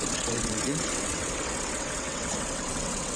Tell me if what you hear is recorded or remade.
remade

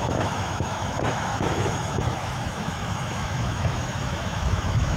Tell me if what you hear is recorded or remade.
remade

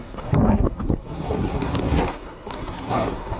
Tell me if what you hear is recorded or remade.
remade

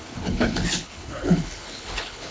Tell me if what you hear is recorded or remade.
remade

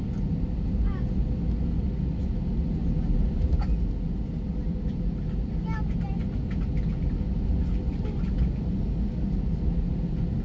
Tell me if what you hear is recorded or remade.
recorded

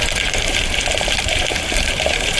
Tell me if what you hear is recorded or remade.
remade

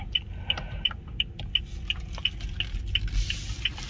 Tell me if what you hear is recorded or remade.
recorded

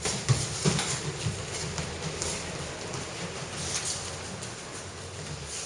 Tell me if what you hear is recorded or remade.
recorded